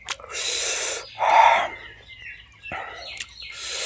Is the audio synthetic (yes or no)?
no